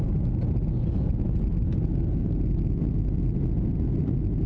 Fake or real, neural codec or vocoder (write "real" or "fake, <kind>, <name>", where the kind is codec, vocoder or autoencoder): real